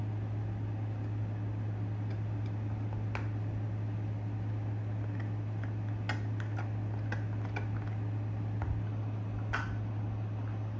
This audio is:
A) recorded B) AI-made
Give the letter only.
A